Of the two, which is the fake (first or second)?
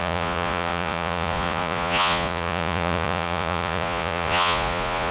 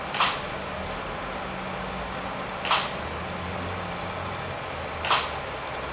first